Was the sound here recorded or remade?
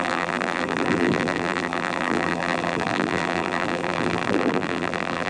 remade